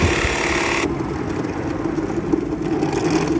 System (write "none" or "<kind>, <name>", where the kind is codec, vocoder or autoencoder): none